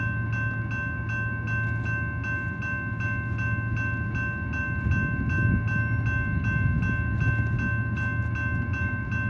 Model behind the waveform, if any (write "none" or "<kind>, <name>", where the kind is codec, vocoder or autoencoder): none